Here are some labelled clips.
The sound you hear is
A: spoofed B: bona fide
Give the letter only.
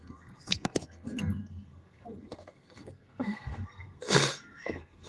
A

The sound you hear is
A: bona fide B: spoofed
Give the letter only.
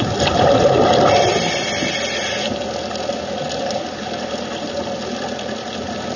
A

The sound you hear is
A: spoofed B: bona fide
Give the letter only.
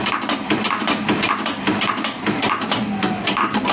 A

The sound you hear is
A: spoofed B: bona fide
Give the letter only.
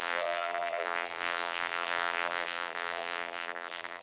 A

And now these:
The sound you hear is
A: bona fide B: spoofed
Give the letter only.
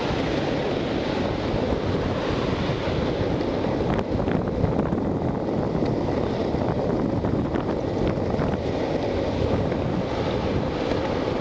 A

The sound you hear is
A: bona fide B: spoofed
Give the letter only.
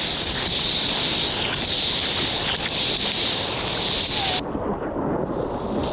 A